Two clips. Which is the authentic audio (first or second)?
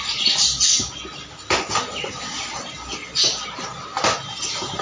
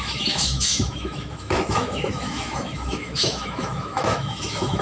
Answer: first